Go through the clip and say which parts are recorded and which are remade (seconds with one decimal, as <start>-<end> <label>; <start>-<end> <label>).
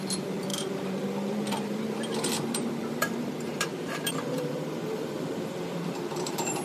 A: 0.0-6.6 remade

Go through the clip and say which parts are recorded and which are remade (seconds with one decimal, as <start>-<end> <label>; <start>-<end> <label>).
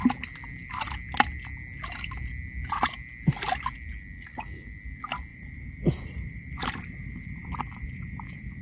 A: 0.0-5.3 recorded; 5.3-8.6 remade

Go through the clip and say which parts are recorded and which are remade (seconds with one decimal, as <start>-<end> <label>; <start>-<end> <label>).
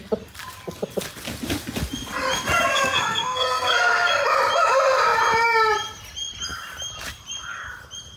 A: 0.0-2.7 recorded; 2.7-4.1 remade; 4.1-8.2 recorded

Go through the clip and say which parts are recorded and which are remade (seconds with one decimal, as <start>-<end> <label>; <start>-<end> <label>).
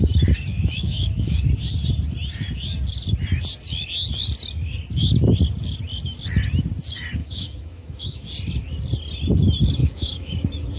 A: 0.0-0.5 recorded; 0.5-1.4 remade; 1.4-7.2 recorded; 7.2-8.3 remade; 8.3-9.8 recorded; 9.8-10.3 remade; 10.3-10.8 recorded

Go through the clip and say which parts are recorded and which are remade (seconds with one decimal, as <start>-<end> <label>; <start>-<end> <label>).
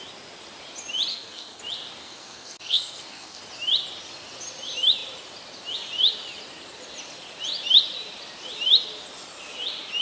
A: 0.0-1.1 recorded; 1.1-1.6 remade; 1.6-2.0 recorded; 2.0-3.4 remade; 3.4-10.0 recorded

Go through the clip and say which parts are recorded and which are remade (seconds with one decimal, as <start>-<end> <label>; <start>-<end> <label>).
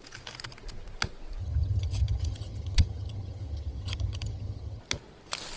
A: 0.0-1.4 recorded; 1.4-4.8 remade; 4.8-5.6 recorded